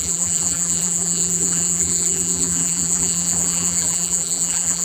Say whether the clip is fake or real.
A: fake